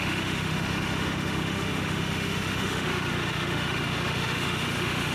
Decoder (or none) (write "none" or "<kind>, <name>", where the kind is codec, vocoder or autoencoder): autoencoder, DAC-VAE